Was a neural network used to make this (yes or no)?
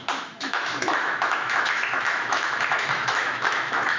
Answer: yes